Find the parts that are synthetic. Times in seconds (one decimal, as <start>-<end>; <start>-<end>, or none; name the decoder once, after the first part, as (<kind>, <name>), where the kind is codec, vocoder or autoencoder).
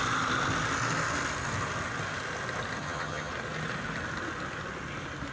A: 2.8-3.3 (vocoder, HiFi-GAN)